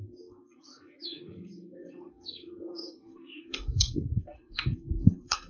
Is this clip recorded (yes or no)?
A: no